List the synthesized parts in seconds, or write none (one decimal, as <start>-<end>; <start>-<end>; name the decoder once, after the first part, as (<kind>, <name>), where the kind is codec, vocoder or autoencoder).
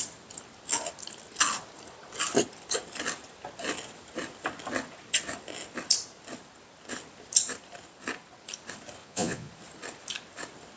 9.0-9.5 (vocoder, Vocos)